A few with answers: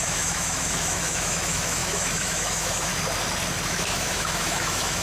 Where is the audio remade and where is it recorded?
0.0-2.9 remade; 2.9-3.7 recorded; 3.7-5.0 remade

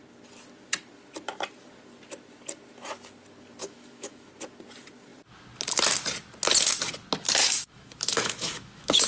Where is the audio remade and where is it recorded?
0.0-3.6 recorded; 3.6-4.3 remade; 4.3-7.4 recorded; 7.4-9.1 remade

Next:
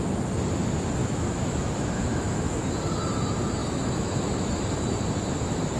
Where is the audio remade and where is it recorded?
0.0-1.0 recorded; 1.0-2.6 remade; 2.6-3.6 recorded; 3.6-4.6 remade; 4.6-5.8 recorded